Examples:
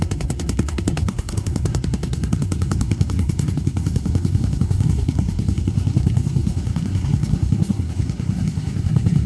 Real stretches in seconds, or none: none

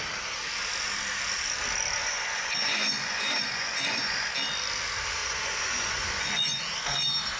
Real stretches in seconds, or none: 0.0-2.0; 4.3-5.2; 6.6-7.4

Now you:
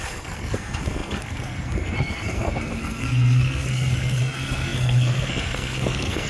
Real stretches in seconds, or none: none